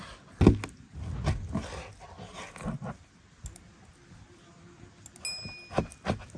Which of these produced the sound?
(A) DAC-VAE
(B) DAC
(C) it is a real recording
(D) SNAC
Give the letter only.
C